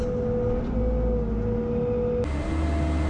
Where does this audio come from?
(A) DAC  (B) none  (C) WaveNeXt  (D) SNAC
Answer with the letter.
B